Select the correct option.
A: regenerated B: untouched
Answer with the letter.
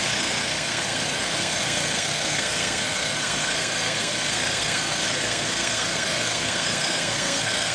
A